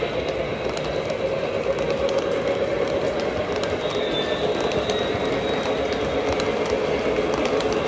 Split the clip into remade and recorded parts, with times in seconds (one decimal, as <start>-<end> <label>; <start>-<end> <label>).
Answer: 0.0-7.9 recorded